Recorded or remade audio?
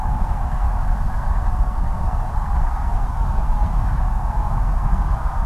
remade